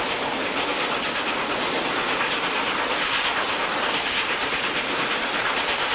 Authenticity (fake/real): real